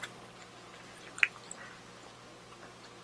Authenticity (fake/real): real